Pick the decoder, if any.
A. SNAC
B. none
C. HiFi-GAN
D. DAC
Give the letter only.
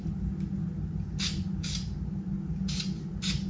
B